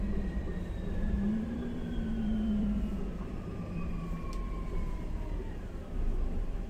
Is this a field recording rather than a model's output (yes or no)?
no